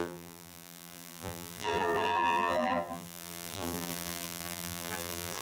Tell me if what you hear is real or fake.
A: fake